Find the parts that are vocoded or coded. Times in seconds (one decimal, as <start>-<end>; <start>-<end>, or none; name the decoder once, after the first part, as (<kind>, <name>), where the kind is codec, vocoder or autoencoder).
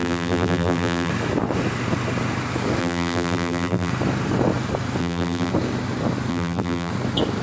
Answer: 0.0-1.1 (vocoder, BigVGAN v2); 2.8-3.9; 5.0-5.5; 6.3-6.9